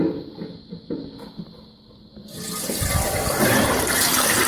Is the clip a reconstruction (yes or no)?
no